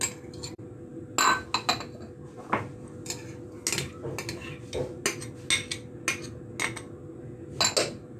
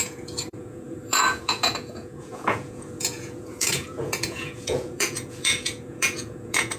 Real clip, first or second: first